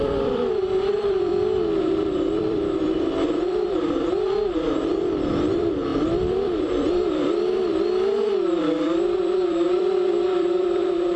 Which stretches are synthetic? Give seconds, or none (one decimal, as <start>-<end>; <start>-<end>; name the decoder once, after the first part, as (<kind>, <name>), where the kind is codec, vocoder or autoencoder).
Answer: 0.0-1.3 (vocoder, BigVGAN v2); 1.8-11.2